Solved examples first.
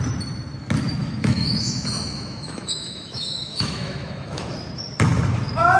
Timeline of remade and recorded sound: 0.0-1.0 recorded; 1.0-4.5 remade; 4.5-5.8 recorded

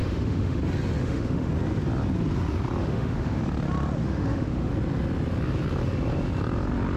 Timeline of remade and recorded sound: 0.0-0.6 remade; 0.6-1.0 recorded; 1.0-1.5 remade; 1.5-2.8 recorded; 2.8-3.4 remade; 3.4-4.0 recorded; 4.0-4.7 remade; 4.7-7.0 recorded

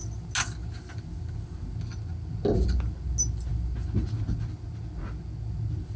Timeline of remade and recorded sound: 0.0-6.0 recorded

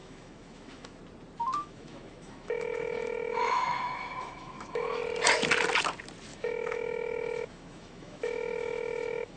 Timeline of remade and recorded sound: 0.0-1.0 remade; 1.0-1.6 recorded; 1.6-5.0 remade; 5.0-6.3 recorded; 6.3-9.4 remade

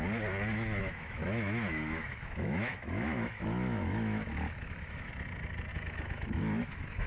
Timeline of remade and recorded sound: 0.0-0.8 recorded; 0.8-5.1 remade; 5.1-5.7 recorded; 5.7-7.1 remade